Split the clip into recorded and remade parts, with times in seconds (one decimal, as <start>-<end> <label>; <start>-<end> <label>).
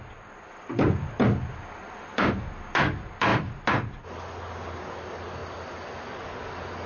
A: 0.0-6.9 recorded